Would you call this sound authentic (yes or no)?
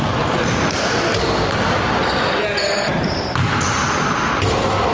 yes